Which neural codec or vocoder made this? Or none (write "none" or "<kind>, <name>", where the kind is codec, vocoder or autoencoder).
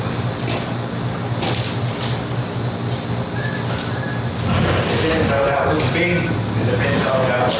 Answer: none